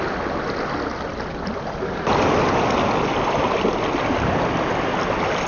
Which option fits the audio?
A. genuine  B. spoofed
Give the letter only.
A